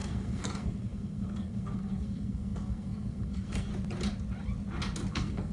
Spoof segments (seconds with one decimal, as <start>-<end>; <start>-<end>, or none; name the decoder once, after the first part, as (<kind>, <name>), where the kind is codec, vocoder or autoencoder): 0.0-3.7 (codec, SNAC); 5.1-5.5